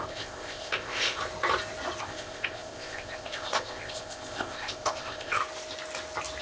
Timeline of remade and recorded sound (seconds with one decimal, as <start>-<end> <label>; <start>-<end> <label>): 0.0-1.2 remade; 1.2-2.0 recorded; 2.0-5.4 remade; 5.4-6.4 recorded